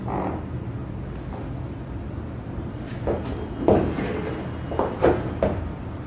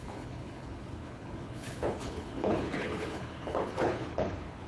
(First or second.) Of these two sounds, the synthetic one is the second